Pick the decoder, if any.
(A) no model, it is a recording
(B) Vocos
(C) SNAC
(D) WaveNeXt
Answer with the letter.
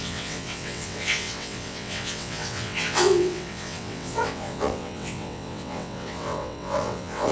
D